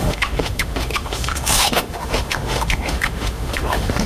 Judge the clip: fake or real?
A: fake